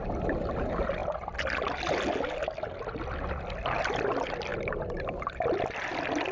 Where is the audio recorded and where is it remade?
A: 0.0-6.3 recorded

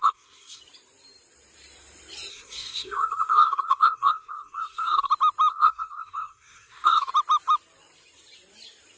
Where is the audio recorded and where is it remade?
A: 0.0-0.6 remade; 0.6-2.3 recorded; 2.3-5.1 remade; 5.1-5.5 recorded; 5.5-7.1 remade; 7.1-9.0 recorded

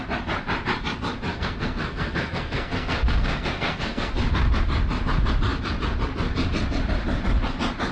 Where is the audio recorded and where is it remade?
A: 0.0-1.3 recorded; 1.3-4.1 remade; 4.1-7.9 recorded

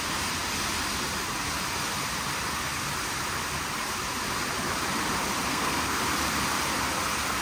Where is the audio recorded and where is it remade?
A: 0.0-5.5 recorded; 5.5-6.0 remade; 6.0-7.4 recorded

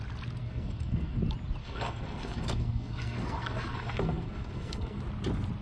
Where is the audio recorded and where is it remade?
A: 0.0-0.4 recorded; 0.4-1.2 remade; 1.2-1.6 recorded; 1.6-5.0 remade; 5.0-5.6 recorded